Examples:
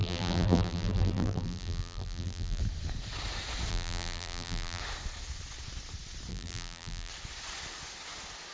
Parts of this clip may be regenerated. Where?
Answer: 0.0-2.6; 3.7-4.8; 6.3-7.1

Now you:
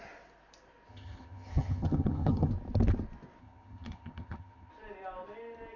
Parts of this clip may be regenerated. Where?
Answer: 0.9-2.5; 3.4-4.7